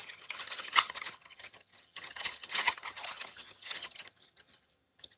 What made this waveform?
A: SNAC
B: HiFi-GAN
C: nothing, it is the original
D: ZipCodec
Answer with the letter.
B